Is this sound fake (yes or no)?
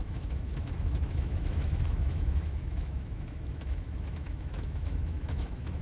yes